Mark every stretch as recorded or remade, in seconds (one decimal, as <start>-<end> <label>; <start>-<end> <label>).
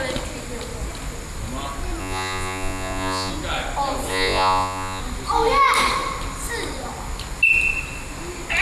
0.0-2.0 recorded; 2.0-3.3 remade; 3.3-4.1 recorded; 4.1-5.0 remade; 5.0-8.6 recorded